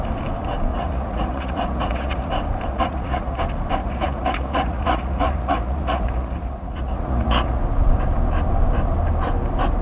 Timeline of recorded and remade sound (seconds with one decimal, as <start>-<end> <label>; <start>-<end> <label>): 0.0-0.7 recorded; 0.7-2.3 remade; 2.3-2.7 recorded; 2.7-3.4 remade; 3.4-3.8 recorded; 3.8-7.6 remade; 7.6-9.8 recorded